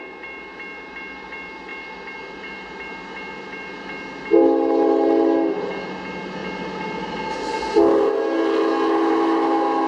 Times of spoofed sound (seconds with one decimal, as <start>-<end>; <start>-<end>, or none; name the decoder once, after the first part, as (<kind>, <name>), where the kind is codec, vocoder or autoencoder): none